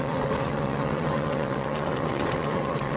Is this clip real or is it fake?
fake